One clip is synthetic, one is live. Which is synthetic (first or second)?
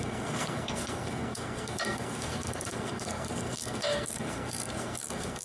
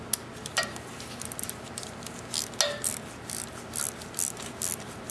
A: first